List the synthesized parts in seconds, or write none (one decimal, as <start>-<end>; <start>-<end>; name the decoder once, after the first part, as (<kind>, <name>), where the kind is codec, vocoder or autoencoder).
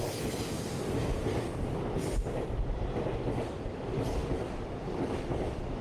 none